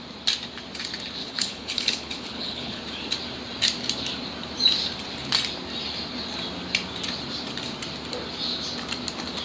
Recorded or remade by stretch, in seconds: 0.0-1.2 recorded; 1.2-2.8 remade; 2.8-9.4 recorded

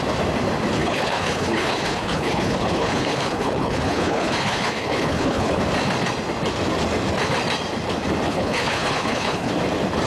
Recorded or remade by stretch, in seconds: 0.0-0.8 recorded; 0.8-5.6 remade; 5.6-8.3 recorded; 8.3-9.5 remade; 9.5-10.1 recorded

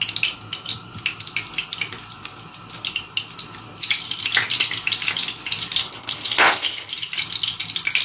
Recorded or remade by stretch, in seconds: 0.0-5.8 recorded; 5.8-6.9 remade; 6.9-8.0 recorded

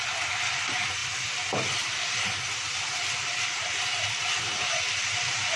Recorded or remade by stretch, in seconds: 0.0-5.6 recorded

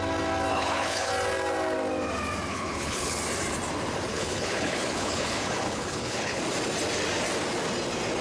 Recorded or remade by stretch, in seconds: 0.0-0.5 recorded; 0.5-1.1 remade; 1.1-2.5 recorded; 2.5-3.2 remade; 3.2-4.1 recorded; 4.1-6.4 remade; 6.4-8.2 recorded